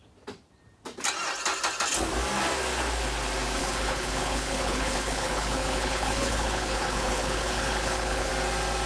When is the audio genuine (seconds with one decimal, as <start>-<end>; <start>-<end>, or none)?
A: 0.0-3.6; 8.3-8.9